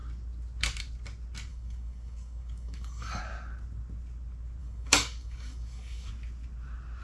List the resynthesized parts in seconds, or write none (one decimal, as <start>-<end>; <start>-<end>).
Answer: 1.5-3.2; 4.6-6.1